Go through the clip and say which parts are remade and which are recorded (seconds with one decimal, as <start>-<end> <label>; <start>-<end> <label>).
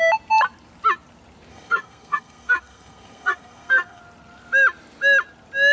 0.0-1.5 recorded; 1.5-4.0 remade; 4.0-5.7 recorded